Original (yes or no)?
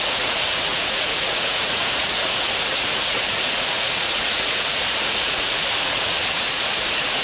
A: no